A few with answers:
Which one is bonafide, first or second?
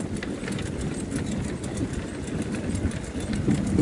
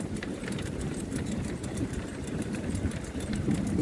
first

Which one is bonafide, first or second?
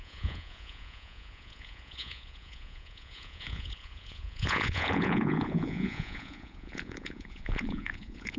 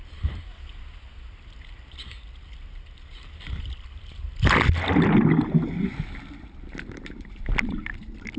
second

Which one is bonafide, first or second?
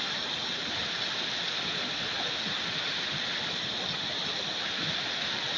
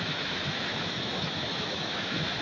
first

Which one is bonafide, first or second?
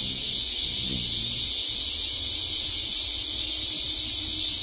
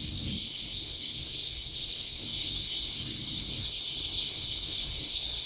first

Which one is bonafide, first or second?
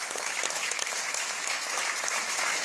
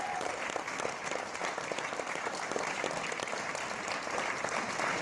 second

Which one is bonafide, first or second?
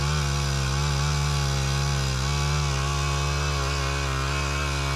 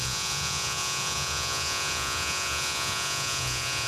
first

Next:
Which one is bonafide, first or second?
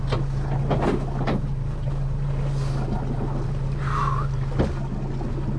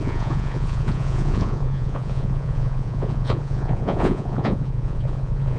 first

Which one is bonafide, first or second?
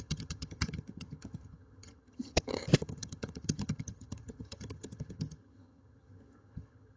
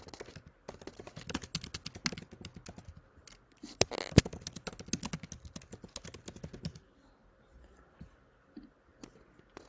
second